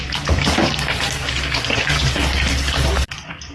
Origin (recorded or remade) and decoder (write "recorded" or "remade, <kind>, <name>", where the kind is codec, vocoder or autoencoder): remade, codec, DAC